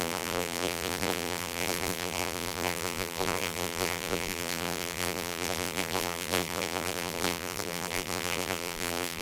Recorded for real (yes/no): no